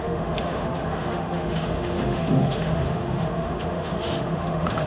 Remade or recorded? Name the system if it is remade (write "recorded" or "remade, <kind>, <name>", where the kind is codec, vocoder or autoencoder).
remade, autoencoder, DAC-VAE